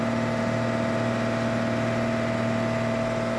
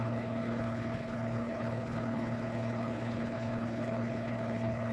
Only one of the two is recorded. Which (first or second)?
first